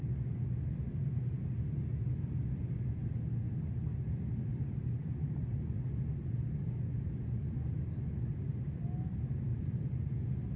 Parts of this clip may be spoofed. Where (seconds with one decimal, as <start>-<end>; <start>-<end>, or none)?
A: 9.5-10.0